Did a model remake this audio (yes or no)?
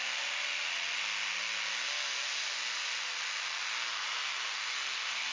no